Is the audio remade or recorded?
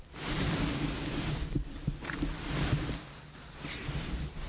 recorded